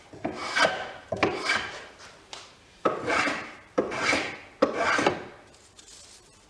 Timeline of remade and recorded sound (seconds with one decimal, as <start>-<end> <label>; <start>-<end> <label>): 0.0-0.4 recorded; 0.4-4.3 remade; 4.3-6.5 recorded